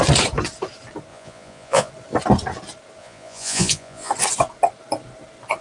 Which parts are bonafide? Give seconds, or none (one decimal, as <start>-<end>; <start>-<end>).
0.0-1.1; 1.9-3.0; 4.1-5.6